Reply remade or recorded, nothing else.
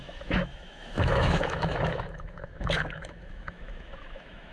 remade